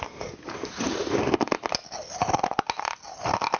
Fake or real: real